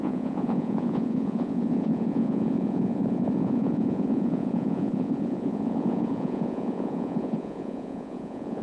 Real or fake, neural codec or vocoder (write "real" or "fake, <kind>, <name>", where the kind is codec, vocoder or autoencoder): fake, vocoder, Vocos